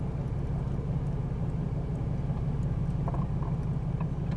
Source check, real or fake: real